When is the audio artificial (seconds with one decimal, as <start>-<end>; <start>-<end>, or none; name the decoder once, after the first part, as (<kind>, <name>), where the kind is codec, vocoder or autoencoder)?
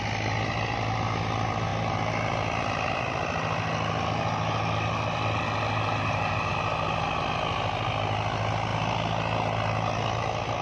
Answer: none